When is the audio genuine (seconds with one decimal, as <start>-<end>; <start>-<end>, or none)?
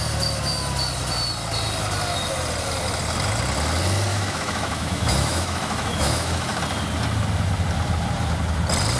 0.0-4.1; 6.6-9.0